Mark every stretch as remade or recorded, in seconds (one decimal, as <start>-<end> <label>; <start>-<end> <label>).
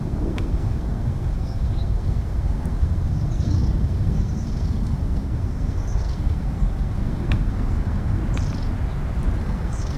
0.0-8.2 remade; 8.2-9.4 recorded; 9.4-10.0 remade